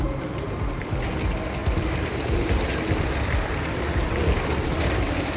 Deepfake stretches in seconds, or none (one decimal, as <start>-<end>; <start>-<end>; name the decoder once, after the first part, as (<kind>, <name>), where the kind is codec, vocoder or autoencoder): 1.6-4.8 (vocoder, BigVGAN v2)